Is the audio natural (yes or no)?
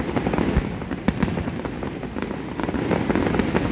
yes